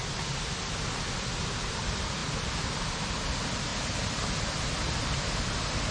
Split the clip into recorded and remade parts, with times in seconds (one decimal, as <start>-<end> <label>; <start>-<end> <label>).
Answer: 0.0-5.9 recorded